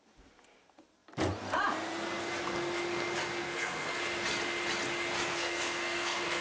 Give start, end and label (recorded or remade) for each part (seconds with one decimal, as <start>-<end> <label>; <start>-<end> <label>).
0.0-3.4 recorded; 3.4-4.0 remade; 4.0-5.3 recorded; 5.3-6.4 remade